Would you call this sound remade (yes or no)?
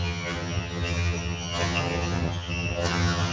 yes